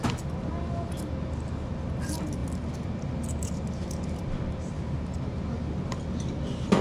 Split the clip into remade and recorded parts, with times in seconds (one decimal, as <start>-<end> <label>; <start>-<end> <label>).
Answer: 0.0-6.8 recorded